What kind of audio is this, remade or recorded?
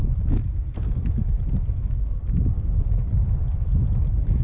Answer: recorded